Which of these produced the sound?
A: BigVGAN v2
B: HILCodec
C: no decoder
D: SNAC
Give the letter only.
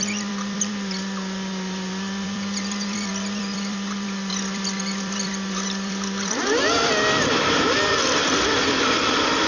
A